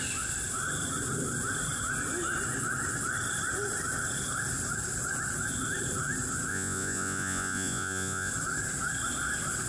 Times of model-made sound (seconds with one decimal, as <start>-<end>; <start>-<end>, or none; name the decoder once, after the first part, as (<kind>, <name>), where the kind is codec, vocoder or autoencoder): 6.5-8.3 (vocoder, Vocos)